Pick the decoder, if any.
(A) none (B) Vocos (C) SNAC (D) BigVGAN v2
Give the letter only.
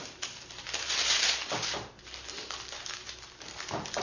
A